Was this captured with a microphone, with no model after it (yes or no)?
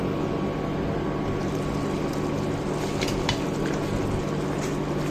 yes